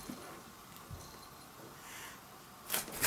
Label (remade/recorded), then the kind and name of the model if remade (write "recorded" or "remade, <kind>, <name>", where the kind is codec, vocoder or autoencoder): recorded